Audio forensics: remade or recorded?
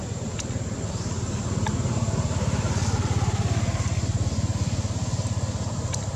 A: remade